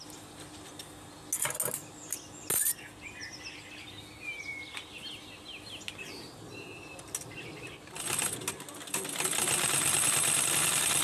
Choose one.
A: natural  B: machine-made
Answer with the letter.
A